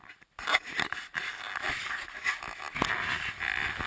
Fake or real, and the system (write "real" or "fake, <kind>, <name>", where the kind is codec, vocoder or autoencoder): real